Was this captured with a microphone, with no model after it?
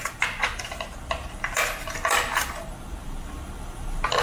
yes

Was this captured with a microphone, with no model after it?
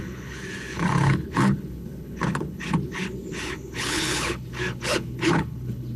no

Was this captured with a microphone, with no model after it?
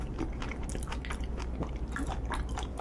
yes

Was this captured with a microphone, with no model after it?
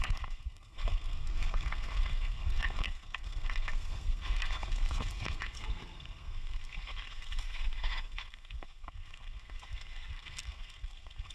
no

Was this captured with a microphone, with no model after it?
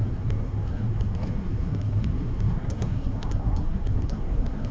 no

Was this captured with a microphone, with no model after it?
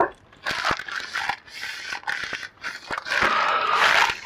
yes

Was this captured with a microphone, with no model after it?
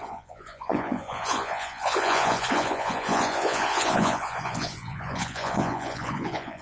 no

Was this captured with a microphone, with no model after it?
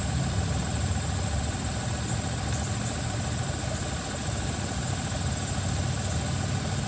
yes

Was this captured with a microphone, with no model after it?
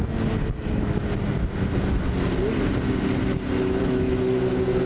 yes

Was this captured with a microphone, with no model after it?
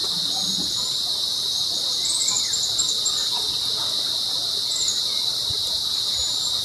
yes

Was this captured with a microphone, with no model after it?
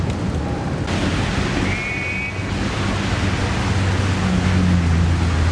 yes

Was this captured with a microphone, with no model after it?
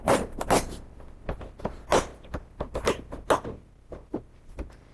yes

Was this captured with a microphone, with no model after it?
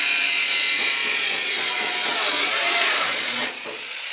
no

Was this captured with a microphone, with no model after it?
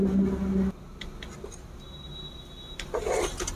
yes